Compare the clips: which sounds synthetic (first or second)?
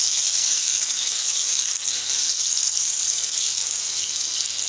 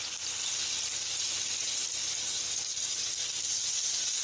first